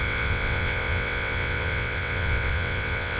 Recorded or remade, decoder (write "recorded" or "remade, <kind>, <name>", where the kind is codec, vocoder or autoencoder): remade, vocoder, WaveNeXt